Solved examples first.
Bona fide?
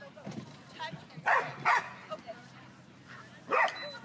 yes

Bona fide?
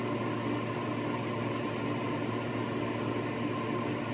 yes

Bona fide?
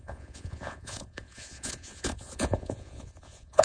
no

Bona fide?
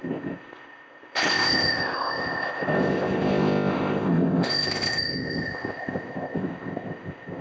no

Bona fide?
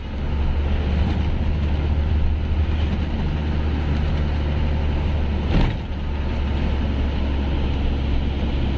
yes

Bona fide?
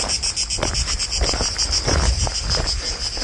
yes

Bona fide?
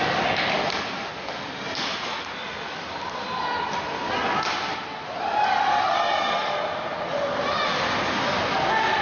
yes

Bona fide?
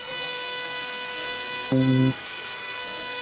no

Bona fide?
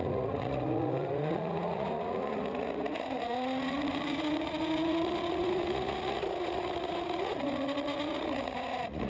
no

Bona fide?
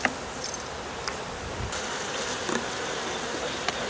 yes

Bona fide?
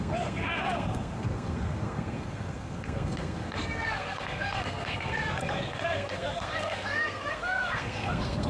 no